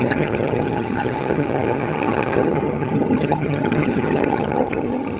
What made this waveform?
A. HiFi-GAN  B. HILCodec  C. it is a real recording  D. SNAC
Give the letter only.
A